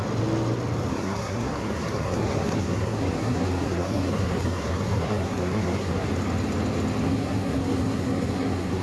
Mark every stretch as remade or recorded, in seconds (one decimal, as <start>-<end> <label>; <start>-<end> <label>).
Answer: 0.0-0.9 recorded; 0.9-6.1 remade; 6.1-7.0 recorded; 7.0-8.8 remade